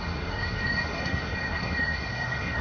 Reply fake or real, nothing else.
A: fake